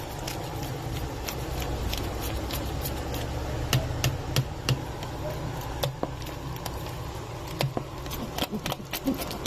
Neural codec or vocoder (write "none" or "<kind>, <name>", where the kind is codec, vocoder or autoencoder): none